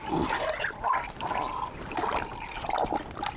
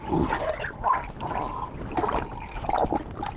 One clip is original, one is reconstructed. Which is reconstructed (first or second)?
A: first